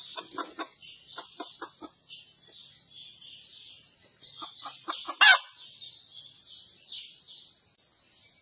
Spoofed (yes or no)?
no